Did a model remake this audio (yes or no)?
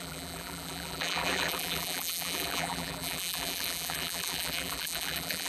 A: yes